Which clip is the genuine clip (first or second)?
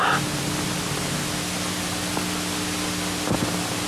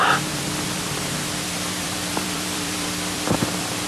first